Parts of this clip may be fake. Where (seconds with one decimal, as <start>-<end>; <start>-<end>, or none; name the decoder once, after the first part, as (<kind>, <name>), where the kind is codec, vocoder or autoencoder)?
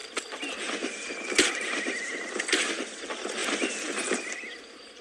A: none